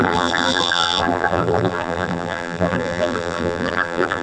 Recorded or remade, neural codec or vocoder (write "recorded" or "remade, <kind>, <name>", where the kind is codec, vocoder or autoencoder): remade, vocoder, BigVGAN v2